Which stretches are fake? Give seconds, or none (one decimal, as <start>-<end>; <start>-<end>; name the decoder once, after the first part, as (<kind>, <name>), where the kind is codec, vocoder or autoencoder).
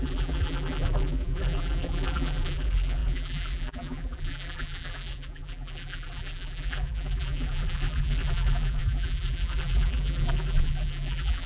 0.0-11.5 (vocoder, BigVGAN v2)